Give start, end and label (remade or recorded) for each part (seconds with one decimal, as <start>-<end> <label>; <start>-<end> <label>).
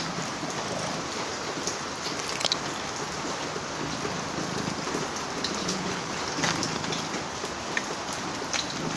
0.0-5.6 recorded; 5.6-6.1 remade; 6.1-9.0 recorded